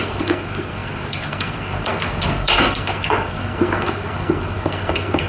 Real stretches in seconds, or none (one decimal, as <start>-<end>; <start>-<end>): none